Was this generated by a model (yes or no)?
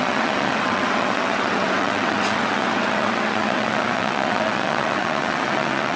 yes